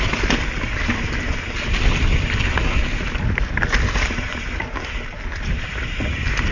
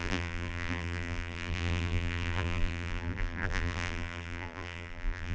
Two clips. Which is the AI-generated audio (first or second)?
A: second